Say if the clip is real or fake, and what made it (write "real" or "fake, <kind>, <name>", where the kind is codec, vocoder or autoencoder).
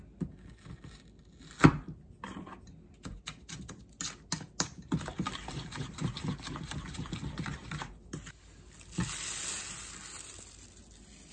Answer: real